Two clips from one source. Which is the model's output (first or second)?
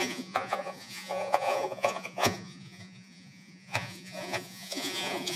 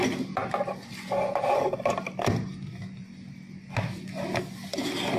first